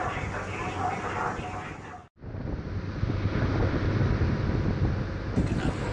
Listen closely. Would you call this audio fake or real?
real